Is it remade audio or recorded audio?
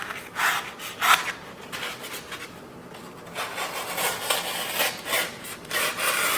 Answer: recorded